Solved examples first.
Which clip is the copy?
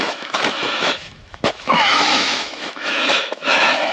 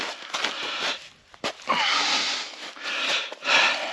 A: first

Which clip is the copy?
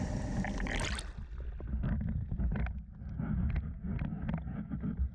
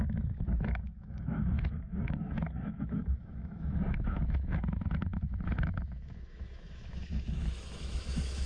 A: second